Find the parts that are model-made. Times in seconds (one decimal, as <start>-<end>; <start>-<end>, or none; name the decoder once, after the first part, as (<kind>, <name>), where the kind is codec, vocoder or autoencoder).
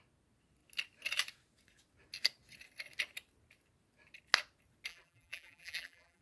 4.9-6.2 (vocoder, BigVGAN v2)